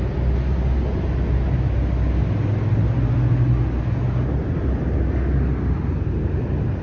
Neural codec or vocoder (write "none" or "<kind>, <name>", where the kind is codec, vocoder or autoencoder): none